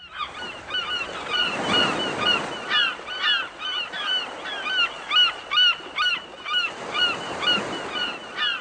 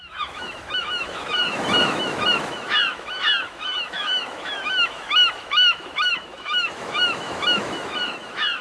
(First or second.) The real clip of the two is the first